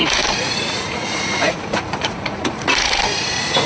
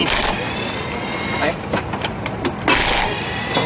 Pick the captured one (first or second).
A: second